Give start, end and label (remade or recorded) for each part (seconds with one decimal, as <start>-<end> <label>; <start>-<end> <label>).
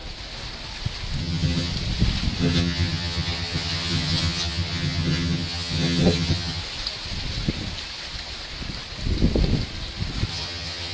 0.0-1.2 recorded; 1.2-1.7 remade; 1.7-2.4 recorded; 2.4-6.6 remade; 6.6-10.3 recorded; 10.3-10.9 remade